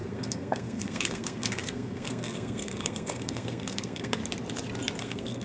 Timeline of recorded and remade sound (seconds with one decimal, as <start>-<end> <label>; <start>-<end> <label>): 0.0-4.2 remade; 4.2-5.0 recorded; 5.0-5.4 remade